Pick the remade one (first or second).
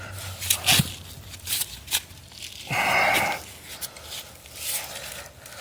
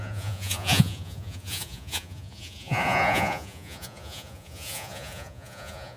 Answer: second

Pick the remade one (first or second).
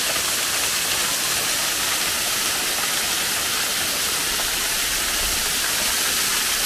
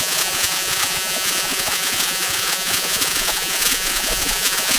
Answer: second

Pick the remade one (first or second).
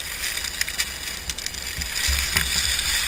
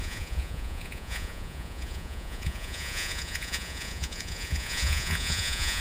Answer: second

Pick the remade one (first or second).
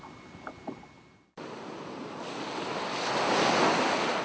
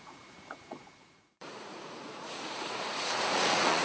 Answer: second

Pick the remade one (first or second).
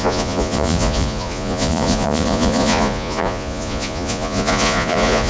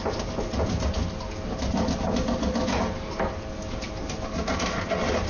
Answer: first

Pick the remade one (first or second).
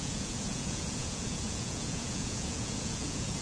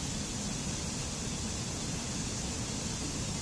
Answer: first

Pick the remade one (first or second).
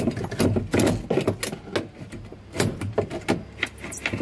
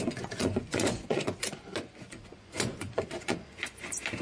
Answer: second